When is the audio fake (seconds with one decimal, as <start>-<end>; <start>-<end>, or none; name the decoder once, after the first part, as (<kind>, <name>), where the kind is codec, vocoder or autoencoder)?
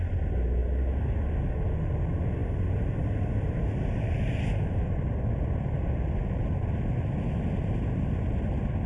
2.4-6.1 (vocoder, BigVGAN v2)